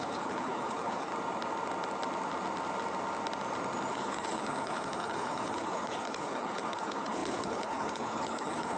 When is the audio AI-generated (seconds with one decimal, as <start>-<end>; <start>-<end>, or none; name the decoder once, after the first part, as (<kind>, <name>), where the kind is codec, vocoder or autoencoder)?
0.0-1.1 (codec, HILCodec); 3.9-8.8